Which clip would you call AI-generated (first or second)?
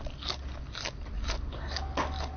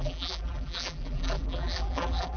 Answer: second